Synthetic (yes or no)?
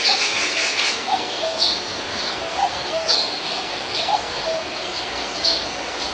yes